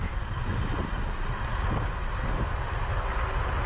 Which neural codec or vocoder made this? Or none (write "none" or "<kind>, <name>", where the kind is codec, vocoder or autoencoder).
none